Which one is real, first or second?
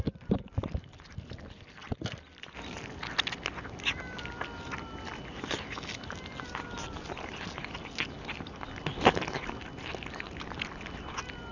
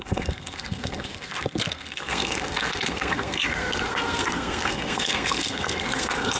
first